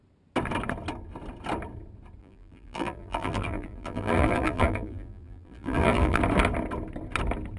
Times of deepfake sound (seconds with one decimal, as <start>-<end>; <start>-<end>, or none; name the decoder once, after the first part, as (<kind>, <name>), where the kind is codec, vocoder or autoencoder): 2.2-6.2 (vocoder, BigVGAN v2)